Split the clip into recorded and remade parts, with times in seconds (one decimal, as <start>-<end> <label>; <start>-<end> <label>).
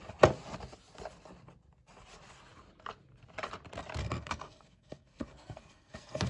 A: 0.0-4.0 recorded; 4.0-6.3 remade